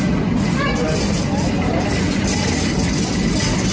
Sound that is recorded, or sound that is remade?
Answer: recorded